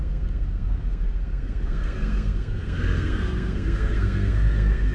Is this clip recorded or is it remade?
remade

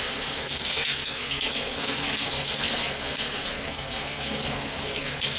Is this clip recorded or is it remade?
remade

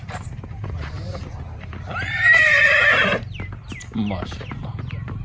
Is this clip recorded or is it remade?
remade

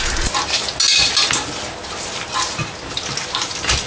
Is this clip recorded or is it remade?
recorded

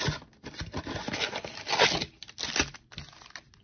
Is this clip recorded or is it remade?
recorded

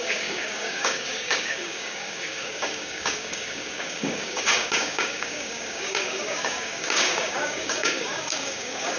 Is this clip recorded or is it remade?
remade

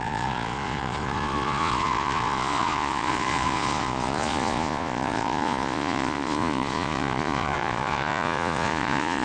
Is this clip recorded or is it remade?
remade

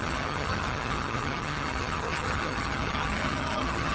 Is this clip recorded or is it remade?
remade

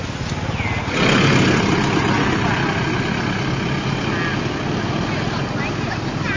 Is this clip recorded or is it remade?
recorded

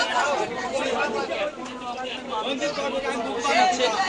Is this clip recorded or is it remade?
recorded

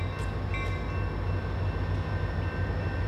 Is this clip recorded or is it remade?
recorded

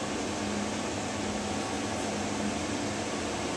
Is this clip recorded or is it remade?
recorded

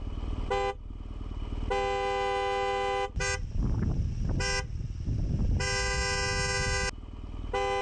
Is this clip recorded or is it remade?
recorded